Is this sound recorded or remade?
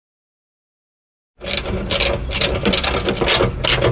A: recorded